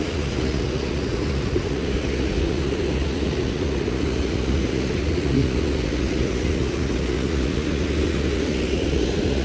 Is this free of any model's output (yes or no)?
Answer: no